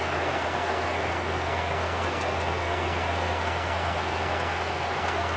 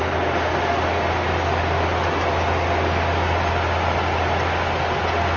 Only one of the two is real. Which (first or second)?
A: second